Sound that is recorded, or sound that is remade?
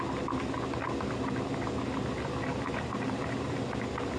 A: recorded